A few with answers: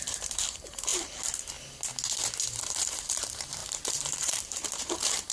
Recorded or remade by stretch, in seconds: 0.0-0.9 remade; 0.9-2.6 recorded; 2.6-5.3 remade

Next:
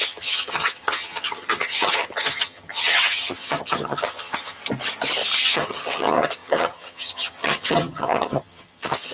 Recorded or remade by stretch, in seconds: 0.0-4.6 remade; 4.6-5.4 recorded; 5.4-9.1 remade

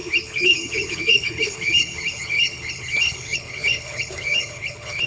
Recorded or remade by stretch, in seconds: 0.0-5.1 remade